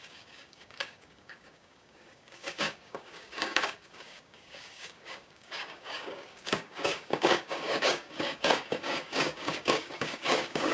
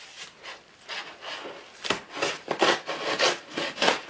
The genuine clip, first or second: second